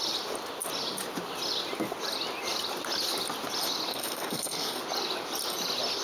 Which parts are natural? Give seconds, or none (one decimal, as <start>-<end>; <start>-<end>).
0.0-3.9; 4.8-6.0